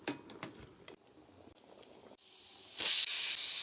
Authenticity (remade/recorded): recorded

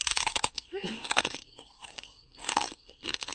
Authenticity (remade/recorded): remade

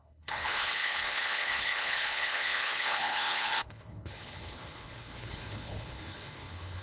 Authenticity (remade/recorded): remade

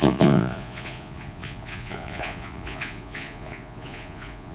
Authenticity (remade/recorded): remade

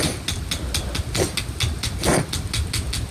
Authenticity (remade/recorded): recorded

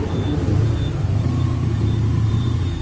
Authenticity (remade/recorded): recorded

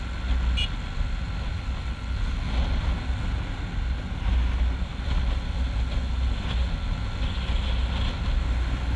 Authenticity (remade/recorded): recorded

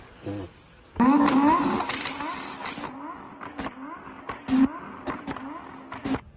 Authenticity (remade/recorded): recorded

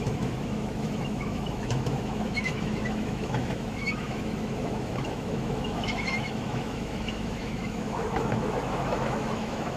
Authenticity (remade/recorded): remade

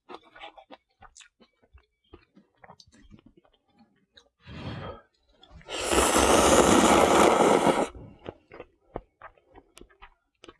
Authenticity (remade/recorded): recorded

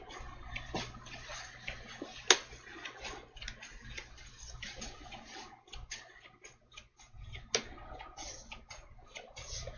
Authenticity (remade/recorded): recorded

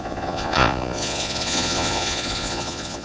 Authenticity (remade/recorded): remade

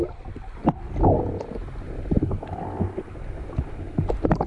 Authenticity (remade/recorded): recorded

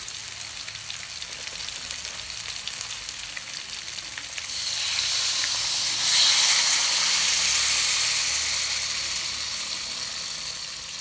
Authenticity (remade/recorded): recorded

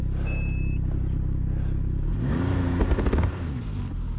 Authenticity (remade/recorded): recorded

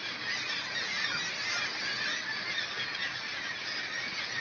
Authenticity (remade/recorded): recorded